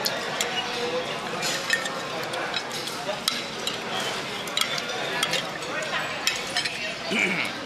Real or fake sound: real